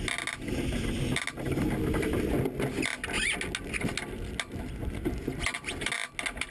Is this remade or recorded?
recorded